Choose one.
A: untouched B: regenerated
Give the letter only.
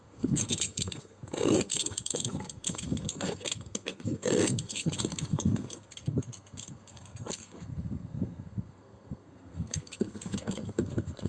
B